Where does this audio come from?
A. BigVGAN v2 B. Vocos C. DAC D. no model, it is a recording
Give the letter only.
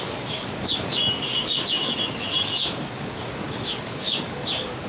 C